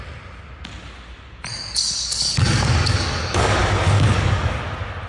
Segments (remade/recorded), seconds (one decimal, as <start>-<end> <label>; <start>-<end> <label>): 0.0-1.5 recorded; 1.5-4.6 remade; 4.6-5.1 recorded